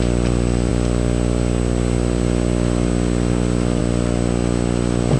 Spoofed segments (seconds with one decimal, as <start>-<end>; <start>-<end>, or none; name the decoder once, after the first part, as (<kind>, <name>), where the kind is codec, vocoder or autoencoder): none